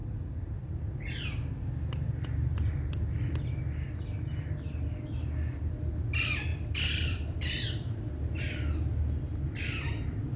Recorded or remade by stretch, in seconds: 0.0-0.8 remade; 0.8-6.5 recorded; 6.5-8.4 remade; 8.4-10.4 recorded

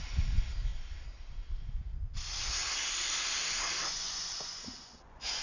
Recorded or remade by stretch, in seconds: 0.0-3.9 recorded; 3.9-5.4 remade

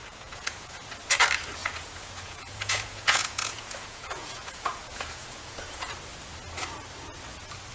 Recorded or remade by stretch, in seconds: 0.0-0.8 remade; 0.8-1.6 recorded; 1.6-5.9 remade; 5.9-7.7 recorded

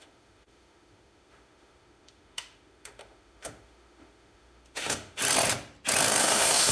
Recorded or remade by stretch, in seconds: 0.0-5.2 remade; 5.2-6.2 recorded; 6.2-6.7 remade

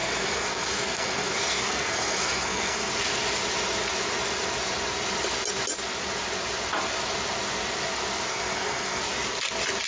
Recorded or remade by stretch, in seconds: 0.0-2.9 remade; 2.9-8.3 recorded; 8.3-9.0 remade; 9.0-9.9 recorded